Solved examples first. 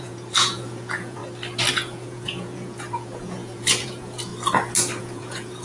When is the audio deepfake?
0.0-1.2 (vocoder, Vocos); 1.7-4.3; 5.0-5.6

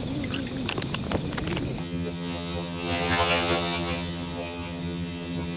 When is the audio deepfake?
1.8-5.6 (vocoder, HiFi-GAN)

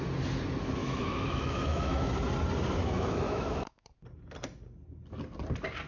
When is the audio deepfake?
0.8-2.1 (autoencoder, DAC-VAE); 2.8-3.9

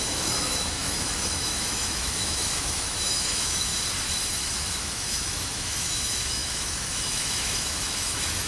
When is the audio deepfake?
0.0-3.7 (autoencoder, DAC-VAE); 4.3-8.5

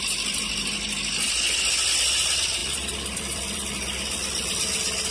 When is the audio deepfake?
2.6-3.7 (vocoder, BigVGAN v2)

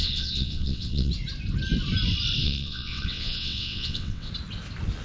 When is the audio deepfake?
0.0-1.1 (vocoder, WaveNeXt); 2.4-4.3